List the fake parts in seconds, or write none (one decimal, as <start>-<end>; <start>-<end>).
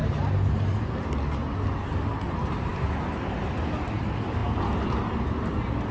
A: none